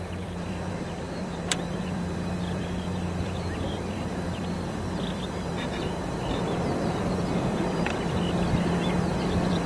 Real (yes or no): no